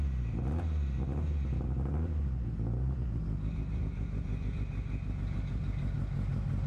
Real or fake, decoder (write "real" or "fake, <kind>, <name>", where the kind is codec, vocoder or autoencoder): real